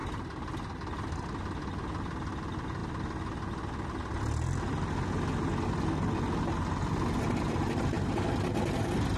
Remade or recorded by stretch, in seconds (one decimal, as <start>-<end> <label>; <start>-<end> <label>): 0.0-9.2 recorded